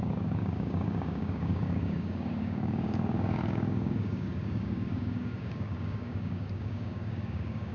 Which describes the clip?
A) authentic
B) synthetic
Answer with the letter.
B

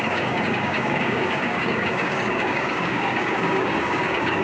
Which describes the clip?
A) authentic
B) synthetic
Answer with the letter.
B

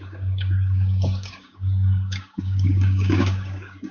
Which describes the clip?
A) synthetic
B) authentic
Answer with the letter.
A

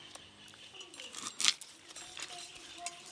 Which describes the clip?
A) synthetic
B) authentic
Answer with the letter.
B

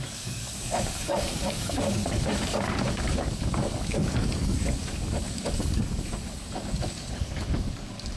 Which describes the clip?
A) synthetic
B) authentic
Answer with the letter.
A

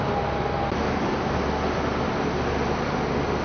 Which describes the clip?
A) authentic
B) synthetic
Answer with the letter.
A